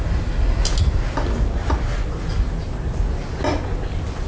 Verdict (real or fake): real